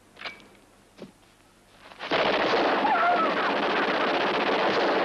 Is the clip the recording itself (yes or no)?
yes